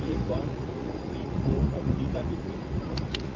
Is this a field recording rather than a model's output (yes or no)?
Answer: no